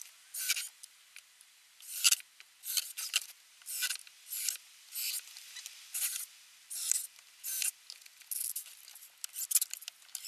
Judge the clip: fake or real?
real